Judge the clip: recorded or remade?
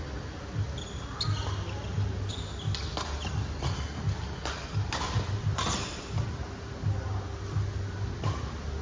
recorded